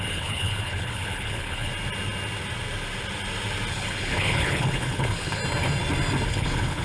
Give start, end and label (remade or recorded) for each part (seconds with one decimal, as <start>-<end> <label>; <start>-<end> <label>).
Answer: 0.0-1.7 remade; 1.7-3.7 recorded; 3.7-5.4 remade; 5.4-6.3 recorded; 6.3-6.8 remade